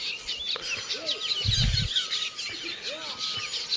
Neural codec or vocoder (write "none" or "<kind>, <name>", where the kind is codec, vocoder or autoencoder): none